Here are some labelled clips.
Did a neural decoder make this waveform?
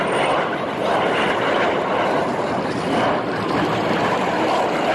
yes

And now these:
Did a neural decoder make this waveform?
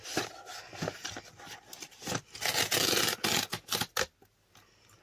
no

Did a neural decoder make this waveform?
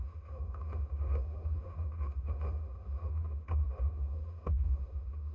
yes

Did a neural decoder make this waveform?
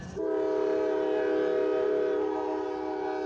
no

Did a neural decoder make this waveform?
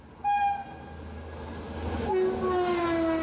no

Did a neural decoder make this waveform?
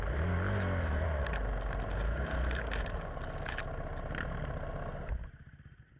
no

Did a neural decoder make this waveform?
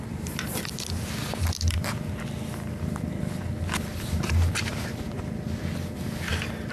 yes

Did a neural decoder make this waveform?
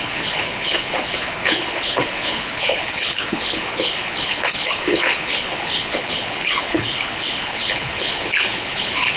yes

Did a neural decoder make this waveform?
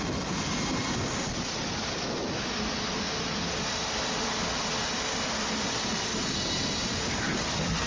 no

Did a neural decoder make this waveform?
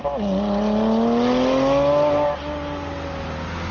no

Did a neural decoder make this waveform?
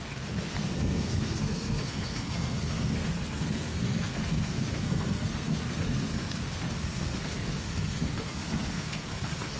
yes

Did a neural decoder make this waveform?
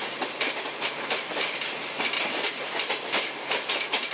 no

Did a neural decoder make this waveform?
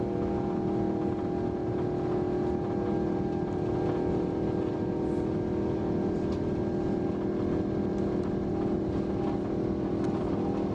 no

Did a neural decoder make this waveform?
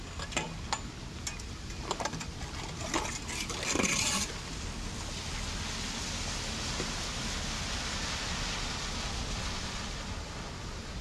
no